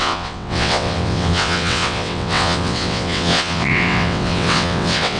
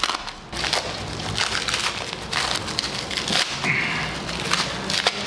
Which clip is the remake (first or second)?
first